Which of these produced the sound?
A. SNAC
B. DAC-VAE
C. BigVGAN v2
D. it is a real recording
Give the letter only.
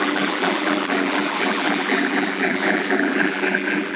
C